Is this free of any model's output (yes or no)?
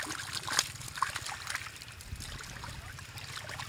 yes